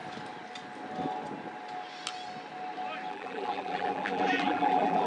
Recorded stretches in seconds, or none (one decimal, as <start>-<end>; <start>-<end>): 0.0-3.1